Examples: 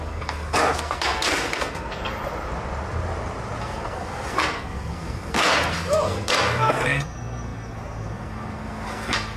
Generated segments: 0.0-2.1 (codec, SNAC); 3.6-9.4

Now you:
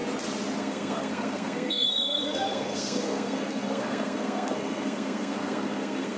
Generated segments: 0.6-6.2 (codec, SNAC)

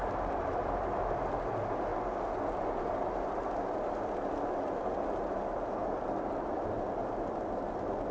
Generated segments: 0.0-1.9 (vocoder, BigVGAN v2); 2.6-8.1